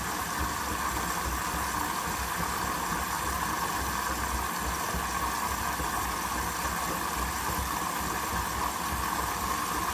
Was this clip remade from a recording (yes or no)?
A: no